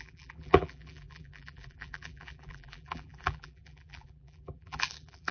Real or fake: fake